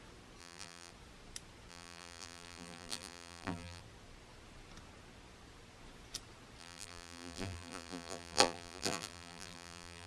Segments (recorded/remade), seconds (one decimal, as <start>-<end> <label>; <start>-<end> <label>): 0.0-0.4 recorded; 0.4-0.9 remade; 0.9-1.7 recorded; 1.7-3.8 remade; 3.8-6.6 recorded; 6.6-10.1 remade